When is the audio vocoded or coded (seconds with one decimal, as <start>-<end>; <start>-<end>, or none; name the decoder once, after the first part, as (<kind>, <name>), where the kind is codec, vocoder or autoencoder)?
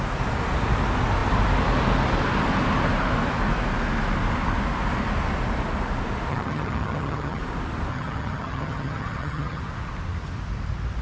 6.3-7.4 (vocoder, HiFi-GAN); 7.9-9.6